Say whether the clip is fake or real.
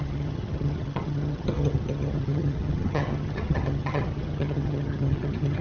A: fake